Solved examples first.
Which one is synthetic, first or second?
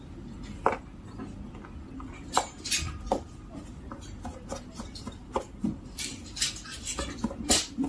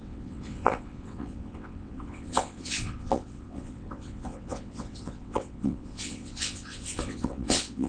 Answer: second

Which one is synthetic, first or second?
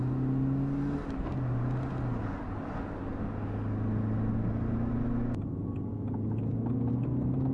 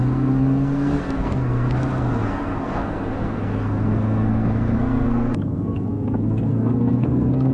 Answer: second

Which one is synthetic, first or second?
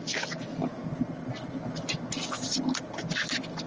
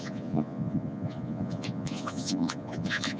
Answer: second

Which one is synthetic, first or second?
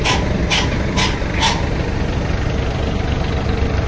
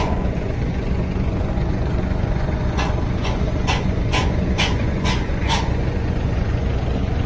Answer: second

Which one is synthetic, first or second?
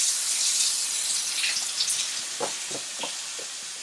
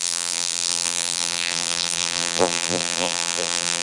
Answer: second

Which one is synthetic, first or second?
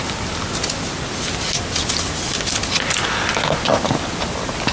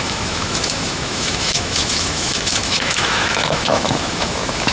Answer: second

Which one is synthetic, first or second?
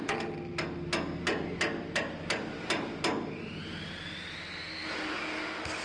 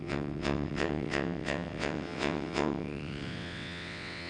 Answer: second